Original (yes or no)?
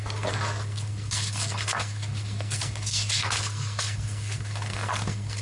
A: no